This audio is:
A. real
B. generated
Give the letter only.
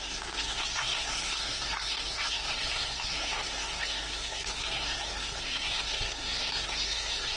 B